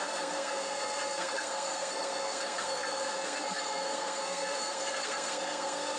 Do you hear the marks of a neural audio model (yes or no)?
yes